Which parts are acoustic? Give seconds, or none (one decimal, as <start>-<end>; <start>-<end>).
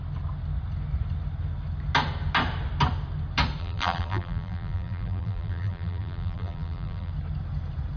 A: 0.0-3.6; 7.1-8.0